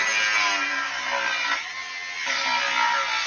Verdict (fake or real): real